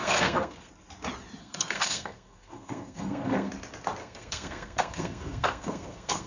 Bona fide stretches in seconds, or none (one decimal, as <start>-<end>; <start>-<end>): 0.7-1.4; 3.5-4.0